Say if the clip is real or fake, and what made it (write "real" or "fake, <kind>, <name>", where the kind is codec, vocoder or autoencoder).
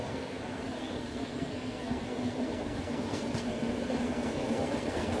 fake, codec, SNAC